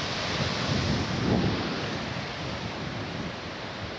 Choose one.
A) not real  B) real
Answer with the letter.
B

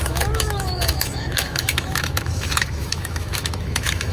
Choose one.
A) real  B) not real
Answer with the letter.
B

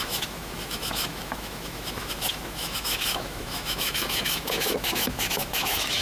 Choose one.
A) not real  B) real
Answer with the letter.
A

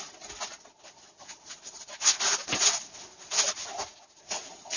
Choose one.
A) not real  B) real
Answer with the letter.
B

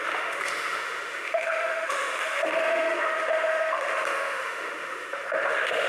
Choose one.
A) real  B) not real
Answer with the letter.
B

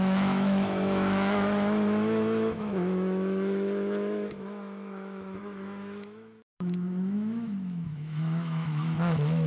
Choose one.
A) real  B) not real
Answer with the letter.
B